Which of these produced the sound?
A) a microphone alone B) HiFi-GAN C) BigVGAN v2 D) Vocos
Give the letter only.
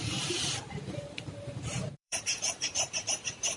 C